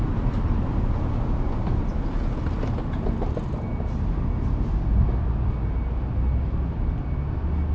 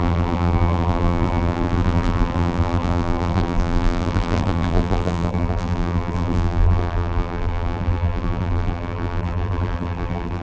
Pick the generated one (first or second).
second